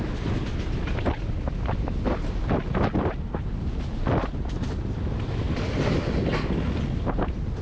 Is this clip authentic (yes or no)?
yes